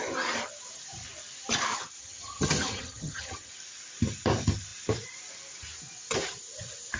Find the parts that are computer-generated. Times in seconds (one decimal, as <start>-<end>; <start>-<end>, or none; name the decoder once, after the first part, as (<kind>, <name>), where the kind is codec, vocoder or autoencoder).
2.0-3.5 (vocoder, HiFi-GAN)